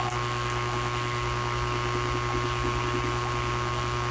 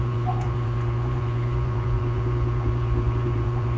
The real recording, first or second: first